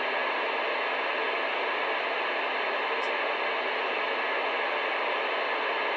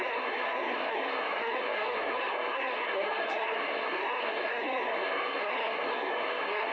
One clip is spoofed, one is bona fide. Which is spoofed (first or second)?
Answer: second